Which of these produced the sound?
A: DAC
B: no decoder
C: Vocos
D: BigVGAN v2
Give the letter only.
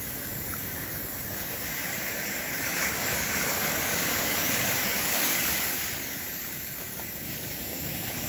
A